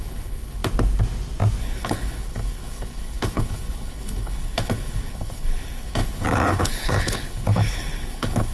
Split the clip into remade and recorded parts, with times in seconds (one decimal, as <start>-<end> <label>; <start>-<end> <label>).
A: 0.0-0.6 remade; 0.6-1.6 recorded; 1.6-8.5 remade

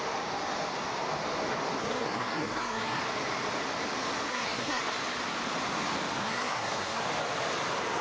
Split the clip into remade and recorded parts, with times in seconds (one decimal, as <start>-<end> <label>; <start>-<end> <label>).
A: 0.0-1.8 recorded; 1.8-3.0 remade; 3.0-4.3 recorded; 4.3-4.8 remade; 4.8-6.2 recorded; 6.2-7.0 remade; 7.0-8.0 recorded

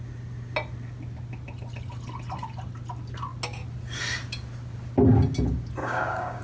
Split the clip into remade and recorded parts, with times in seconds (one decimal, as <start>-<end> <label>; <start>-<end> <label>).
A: 0.0-5.8 recorded; 5.8-6.4 remade

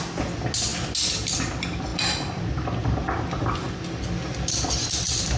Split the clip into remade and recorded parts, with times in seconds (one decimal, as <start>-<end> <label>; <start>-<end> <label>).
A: 0.0-5.4 recorded

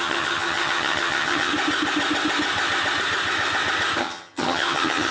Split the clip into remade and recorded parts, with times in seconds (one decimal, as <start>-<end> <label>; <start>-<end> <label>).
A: 0.0-1.5 remade; 1.5-4.0 recorded; 4.0-5.1 remade

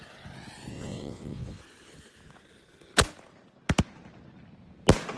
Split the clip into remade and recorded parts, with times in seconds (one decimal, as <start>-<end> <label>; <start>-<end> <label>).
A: 0.0-0.7 recorded; 0.7-1.6 remade; 1.6-5.2 recorded

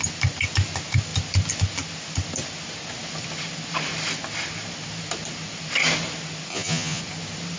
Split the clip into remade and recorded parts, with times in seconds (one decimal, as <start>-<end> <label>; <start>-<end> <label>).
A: 0.0-6.5 recorded; 6.5-7.0 remade; 7.0-7.6 recorded

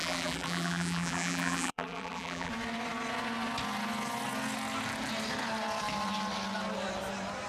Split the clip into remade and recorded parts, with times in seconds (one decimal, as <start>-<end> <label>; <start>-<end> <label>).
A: 0.0-2.5 remade; 2.5-7.5 recorded